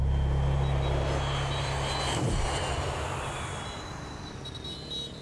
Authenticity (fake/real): real